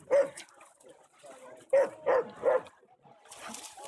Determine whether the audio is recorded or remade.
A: recorded